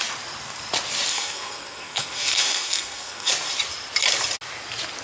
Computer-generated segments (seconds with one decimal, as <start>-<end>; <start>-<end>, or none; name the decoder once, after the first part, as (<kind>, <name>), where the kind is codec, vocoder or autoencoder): 1.1-3.3 (codec, SNAC)